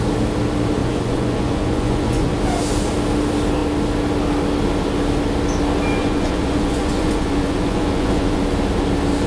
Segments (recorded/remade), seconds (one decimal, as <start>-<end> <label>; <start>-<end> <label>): 0.0-0.8 recorded; 0.8-2.3 remade; 2.3-6.0 recorded; 6.0-8.4 remade; 8.4-9.3 recorded